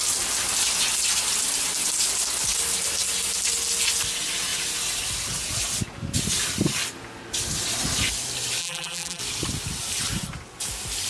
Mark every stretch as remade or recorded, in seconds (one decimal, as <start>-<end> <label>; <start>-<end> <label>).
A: 0.0-8.6 recorded; 8.6-9.2 remade; 9.2-11.1 recorded